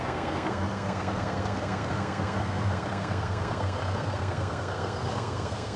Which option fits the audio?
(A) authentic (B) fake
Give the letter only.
B